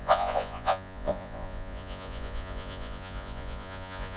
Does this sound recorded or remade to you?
remade